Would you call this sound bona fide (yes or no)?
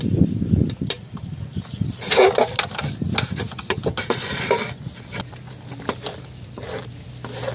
yes